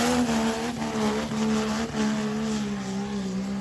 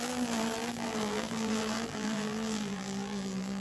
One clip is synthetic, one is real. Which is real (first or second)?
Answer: first